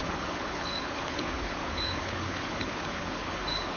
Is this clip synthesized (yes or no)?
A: yes